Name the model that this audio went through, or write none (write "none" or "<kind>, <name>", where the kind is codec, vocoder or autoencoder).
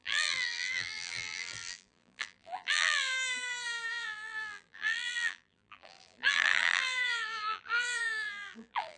vocoder, BigVGAN v2